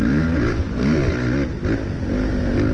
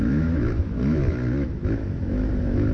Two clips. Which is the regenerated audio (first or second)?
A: second